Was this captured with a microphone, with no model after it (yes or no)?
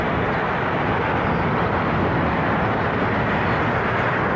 yes